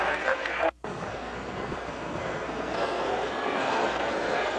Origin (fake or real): fake